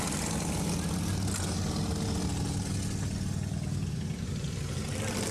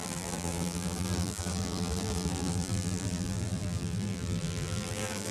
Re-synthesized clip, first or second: second